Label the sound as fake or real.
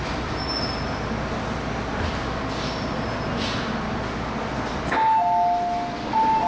real